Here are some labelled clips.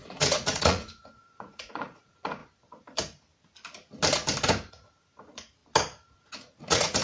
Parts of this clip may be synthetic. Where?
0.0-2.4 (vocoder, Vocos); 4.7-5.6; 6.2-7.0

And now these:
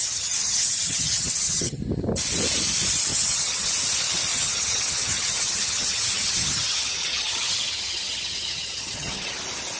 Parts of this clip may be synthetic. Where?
0.0-1.8 (vocoder, HiFi-GAN); 3.1-3.7; 4.3-9.4